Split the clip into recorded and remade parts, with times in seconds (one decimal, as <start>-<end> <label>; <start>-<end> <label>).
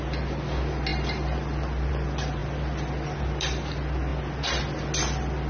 0.0-5.5 recorded